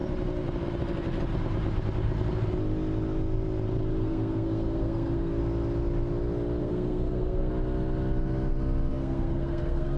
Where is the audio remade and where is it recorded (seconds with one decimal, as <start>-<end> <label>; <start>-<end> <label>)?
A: 0.0-3.9 recorded; 3.9-5.4 remade; 5.4-6.6 recorded; 6.6-7.5 remade; 7.5-8.9 recorded; 8.9-10.0 remade